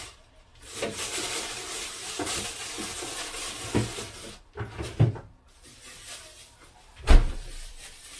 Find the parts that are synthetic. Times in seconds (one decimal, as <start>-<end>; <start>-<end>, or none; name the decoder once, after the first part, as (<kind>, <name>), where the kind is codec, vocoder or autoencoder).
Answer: 0.5-2.4 (vocoder, BigVGAN v2)